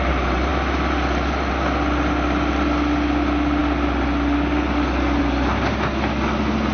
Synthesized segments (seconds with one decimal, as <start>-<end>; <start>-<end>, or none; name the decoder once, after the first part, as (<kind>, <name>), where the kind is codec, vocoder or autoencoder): none